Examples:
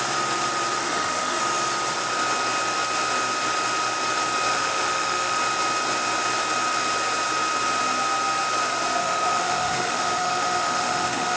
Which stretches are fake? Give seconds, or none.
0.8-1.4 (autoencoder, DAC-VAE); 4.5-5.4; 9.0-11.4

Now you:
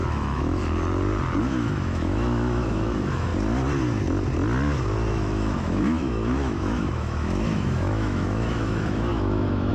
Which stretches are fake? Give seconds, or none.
0.0-0.6 (autoencoder, DAC-VAE); 1.4-3.3; 5.1-9.7